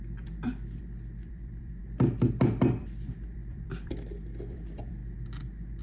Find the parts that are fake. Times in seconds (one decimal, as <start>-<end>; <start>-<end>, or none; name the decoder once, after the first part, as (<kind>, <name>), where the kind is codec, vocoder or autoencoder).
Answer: 0.0-5.0 (vocoder, BigVGAN v2)